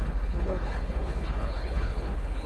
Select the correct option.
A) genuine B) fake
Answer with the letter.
B